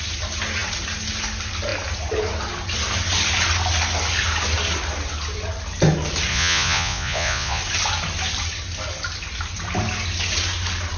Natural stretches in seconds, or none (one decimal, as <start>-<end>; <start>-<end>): 0.0-6.3; 7.6-11.0